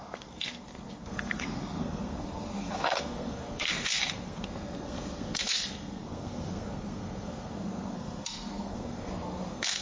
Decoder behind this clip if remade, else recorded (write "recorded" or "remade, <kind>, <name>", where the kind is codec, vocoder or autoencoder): remade, codec, SNAC